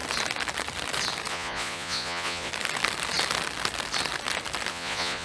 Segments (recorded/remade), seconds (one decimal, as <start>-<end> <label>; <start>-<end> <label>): 0.0-1.3 recorded; 1.3-2.5 remade; 2.5-4.7 recorded; 4.7-5.2 remade